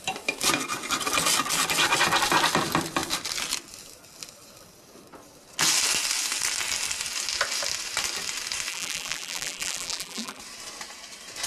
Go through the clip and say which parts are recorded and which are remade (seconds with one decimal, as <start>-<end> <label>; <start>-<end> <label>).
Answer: 0.0-8.7 recorded; 8.7-10.4 remade; 10.4-11.5 recorded